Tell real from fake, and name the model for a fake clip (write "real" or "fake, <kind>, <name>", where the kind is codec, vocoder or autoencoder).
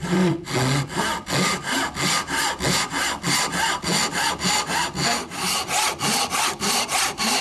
real